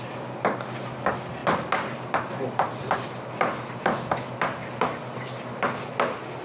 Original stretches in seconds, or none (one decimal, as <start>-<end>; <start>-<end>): 0.0-6.4